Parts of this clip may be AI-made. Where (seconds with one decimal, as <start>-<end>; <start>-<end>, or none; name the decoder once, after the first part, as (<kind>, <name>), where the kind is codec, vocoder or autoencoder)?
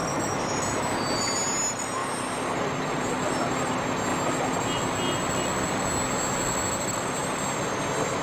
none